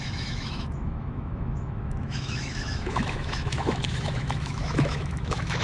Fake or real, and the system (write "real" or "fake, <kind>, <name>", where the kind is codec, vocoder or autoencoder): fake, autoencoder, DAC-VAE